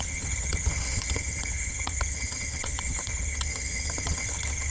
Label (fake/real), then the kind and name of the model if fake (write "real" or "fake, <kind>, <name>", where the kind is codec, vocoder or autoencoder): fake, vocoder, HiFi-GAN